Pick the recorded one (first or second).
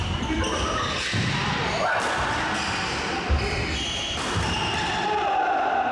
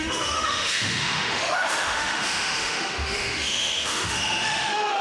first